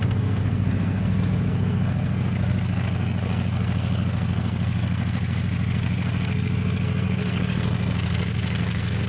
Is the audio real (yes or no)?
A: no